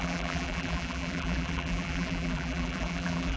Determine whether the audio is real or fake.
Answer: fake